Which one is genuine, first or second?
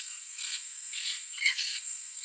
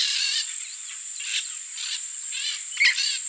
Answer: second